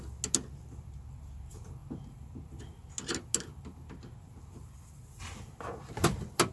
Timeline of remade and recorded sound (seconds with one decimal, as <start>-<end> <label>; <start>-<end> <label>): 0.0-6.5 recorded